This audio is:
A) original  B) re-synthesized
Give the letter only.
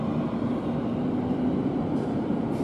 B